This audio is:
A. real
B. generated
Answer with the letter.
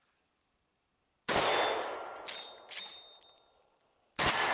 A